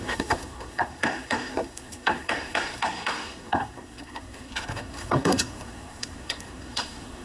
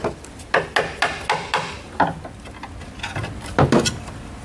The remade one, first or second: first